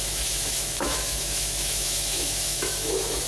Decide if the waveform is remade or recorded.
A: remade